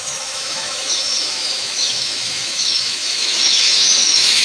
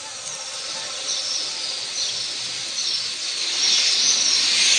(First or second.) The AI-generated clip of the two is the first